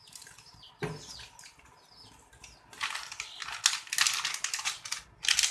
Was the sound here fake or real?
real